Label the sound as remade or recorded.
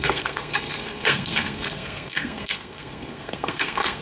remade